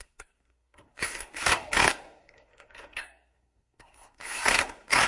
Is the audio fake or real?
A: fake